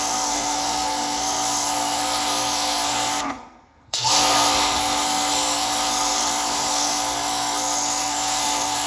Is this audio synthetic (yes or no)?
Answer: yes